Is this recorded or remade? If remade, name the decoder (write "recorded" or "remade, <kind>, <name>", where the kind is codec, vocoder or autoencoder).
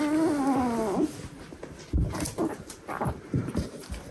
recorded